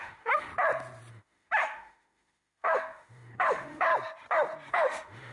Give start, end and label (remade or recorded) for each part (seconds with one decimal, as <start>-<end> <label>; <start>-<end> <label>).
0.0-0.5 remade; 0.5-1.1 recorded; 1.1-3.9 remade; 3.9-4.7 recorded; 4.7-5.3 remade